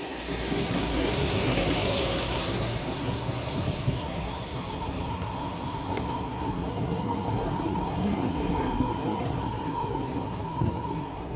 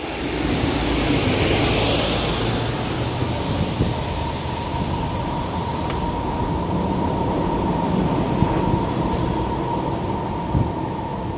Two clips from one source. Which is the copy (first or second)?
first